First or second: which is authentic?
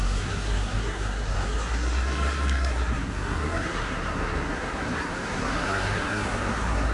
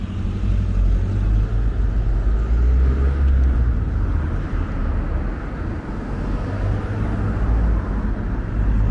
second